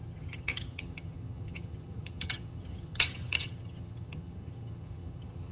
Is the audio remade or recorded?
remade